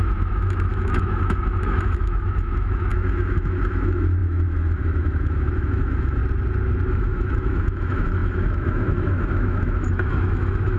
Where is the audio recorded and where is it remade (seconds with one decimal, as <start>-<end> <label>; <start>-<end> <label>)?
0.0-6.2 remade; 6.2-6.9 recorded; 6.9-10.8 remade